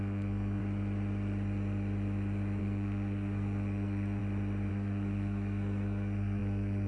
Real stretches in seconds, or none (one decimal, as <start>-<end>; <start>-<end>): 0.6-2.6; 4.2-4.7